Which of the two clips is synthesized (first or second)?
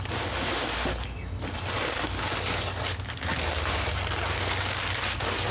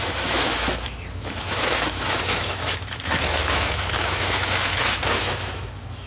second